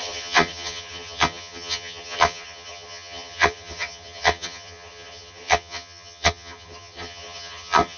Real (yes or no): no